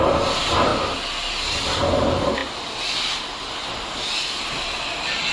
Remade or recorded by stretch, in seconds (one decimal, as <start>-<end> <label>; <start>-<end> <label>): 0.0-5.3 recorded